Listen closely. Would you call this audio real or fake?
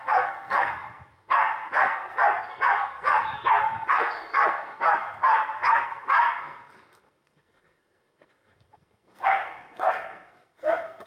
fake